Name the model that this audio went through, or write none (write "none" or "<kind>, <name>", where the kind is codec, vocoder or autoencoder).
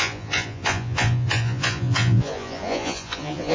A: vocoder, Vocos